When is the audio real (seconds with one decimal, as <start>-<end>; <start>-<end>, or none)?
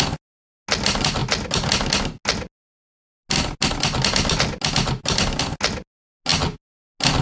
0.0-7.2